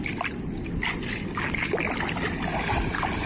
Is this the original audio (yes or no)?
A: yes